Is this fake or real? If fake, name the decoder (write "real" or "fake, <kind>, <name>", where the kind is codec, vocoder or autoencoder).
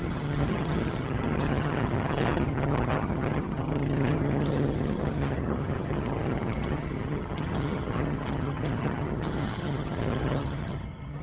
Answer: fake, vocoder, HiFi-GAN